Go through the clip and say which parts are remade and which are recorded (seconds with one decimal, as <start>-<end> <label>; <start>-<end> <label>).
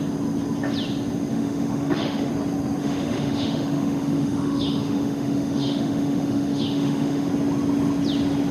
0.0-1.3 recorded; 1.3-2.3 remade; 2.3-2.8 recorded; 2.8-7.3 remade; 7.3-8.5 recorded